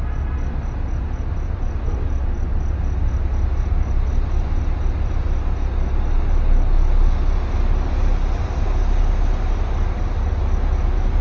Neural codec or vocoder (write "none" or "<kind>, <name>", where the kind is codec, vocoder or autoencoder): none